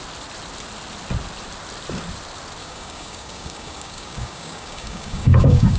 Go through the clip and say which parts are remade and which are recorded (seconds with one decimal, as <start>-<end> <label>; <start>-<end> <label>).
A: 0.0-2.6 recorded; 2.6-5.8 remade